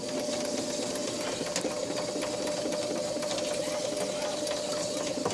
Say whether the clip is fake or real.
real